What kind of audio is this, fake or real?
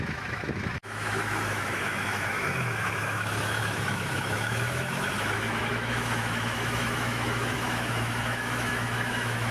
fake